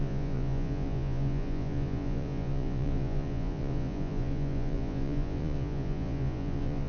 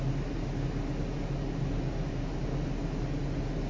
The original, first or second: second